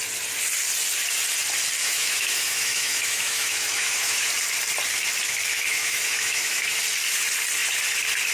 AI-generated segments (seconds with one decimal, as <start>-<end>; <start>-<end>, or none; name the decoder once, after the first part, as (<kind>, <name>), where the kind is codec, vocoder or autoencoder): 1.8-4.3 (autoencoder, DAC-VAE); 5.5-6.8